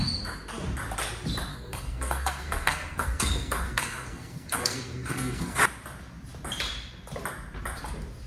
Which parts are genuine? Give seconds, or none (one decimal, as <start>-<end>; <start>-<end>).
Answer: 0.0-1.5; 5.6-8.3